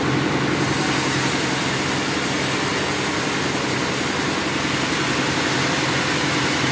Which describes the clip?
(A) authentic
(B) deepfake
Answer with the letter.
A